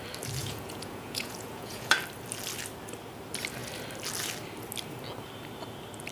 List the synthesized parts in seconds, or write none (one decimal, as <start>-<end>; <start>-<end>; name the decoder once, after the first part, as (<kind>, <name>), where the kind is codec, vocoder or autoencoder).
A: 0.4-1.9 (vocoder, Vocos)